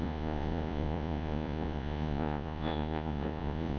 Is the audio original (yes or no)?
no